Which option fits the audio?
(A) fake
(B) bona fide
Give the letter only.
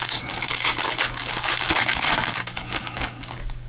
A